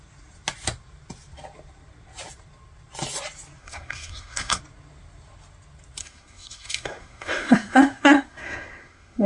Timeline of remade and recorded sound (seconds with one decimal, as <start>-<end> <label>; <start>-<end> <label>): 0.0-3.6 recorded; 3.6-4.6 remade; 4.6-6.0 recorded; 6.0-9.3 remade

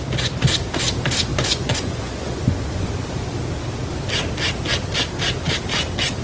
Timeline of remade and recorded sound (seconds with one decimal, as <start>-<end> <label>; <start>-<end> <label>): 0.0-1.3 recorded; 1.3-2.9 remade; 2.9-6.2 recorded

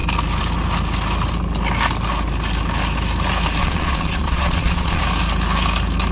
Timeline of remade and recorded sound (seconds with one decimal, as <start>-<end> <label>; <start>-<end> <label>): 0.0-3.6 recorded; 3.6-5.0 remade; 5.0-6.1 recorded

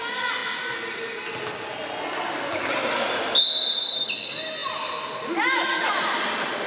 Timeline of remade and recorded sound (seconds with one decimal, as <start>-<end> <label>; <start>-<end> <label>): 0.0-6.7 recorded

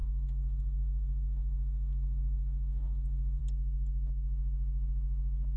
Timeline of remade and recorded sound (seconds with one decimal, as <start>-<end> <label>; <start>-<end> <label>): 0.0-3.4 remade; 3.4-5.6 recorded

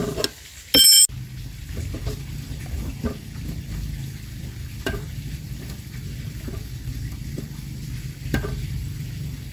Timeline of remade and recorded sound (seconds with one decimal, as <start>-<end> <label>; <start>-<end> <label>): 0.0-1.4 recorded; 1.4-9.5 remade

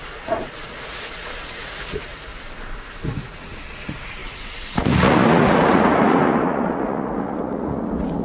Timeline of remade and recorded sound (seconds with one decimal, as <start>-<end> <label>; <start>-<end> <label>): 0.0-2.3 remade; 2.3-3.0 recorded; 3.0-8.2 remade

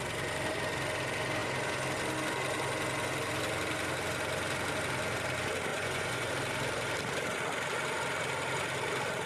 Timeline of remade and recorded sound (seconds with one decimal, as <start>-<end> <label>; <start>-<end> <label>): 0.0-5.7 recorded; 5.7-6.3 remade; 6.3-9.3 recorded